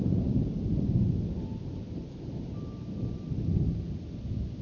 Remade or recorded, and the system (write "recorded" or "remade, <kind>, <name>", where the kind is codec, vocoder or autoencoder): recorded